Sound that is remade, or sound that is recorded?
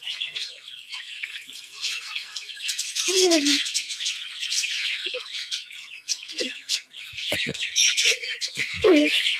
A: remade